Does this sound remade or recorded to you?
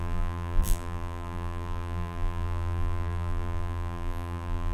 remade